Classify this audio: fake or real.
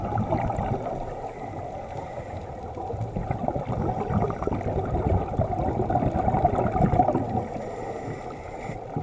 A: real